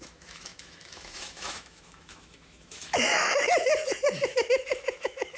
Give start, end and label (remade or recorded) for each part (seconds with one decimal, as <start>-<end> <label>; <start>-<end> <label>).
0.0-5.4 remade